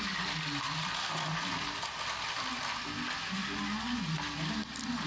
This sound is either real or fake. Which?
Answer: real